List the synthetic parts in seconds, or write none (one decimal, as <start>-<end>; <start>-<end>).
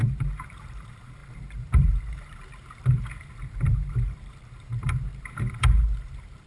0.0-6.5